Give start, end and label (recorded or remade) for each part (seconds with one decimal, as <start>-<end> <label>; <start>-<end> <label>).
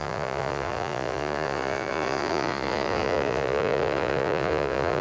0.0-5.0 remade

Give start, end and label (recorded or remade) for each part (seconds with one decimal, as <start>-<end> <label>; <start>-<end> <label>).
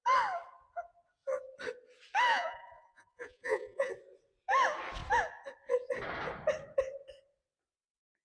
0.0-2.3 recorded; 2.3-3.9 remade; 3.9-8.2 recorded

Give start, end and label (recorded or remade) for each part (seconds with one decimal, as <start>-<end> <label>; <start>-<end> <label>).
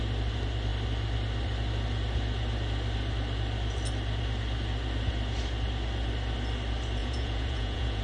0.0-7.0 recorded; 7.0-8.0 remade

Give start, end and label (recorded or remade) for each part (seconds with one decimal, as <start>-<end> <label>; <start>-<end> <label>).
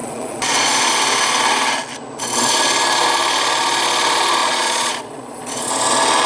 0.0-0.9 remade; 0.9-4.4 recorded; 4.4-5.7 remade; 5.7-6.3 recorded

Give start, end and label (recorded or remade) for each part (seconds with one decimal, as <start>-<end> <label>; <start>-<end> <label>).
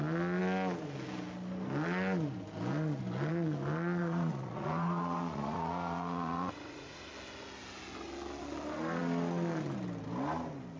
0.0-4.0 recorded; 4.0-7.1 remade; 7.1-10.8 recorded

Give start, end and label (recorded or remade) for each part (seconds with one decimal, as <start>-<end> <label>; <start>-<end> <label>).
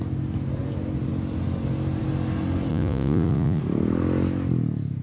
0.0-2.7 recorded; 2.7-3.6 remade; 3.6-5.0 recorded